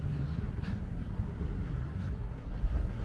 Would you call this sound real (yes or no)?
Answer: no